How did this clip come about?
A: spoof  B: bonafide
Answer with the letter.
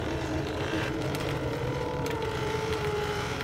A